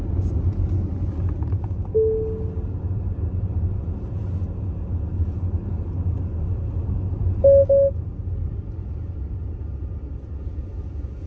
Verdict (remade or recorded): recorded